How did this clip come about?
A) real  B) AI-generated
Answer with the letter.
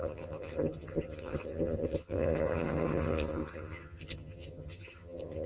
B